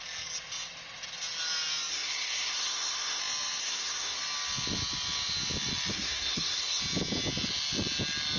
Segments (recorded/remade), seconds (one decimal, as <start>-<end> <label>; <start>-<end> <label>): 0.0-1.9 recorded; 1.9-3.2 remade; 3.2-3.6 recorded; 3.6-4.2 remade; 4.2-5.9 recorded; 5.9-6.8 remade; 6.8-8.4 recorded